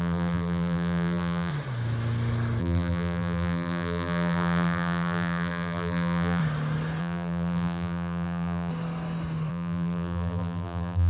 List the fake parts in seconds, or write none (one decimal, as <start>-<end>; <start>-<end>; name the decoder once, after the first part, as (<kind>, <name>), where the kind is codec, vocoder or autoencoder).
0.0-1.5 (vocoder, BigVGAN v2); 2.6-6.4; 7.0-8.7; 9.5-11.1